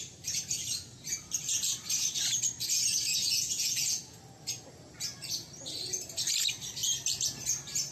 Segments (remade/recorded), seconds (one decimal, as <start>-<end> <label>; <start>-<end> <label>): 0.0-3.2 recorded; 3.2-4.0 remade; 4.0-7.9 recorded